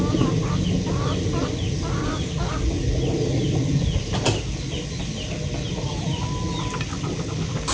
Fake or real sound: real